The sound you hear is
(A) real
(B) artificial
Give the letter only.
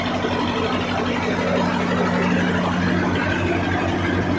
A